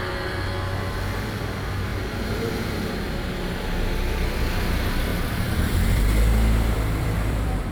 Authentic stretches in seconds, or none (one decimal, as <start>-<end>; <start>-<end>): 0.0-5.1